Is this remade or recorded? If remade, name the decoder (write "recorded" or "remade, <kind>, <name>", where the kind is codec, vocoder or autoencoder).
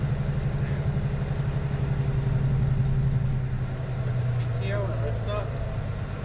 recorded